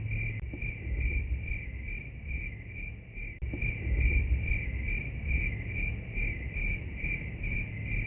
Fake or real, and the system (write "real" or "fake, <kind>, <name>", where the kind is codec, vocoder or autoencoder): real